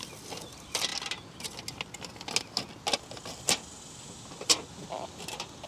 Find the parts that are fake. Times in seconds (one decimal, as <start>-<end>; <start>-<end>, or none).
none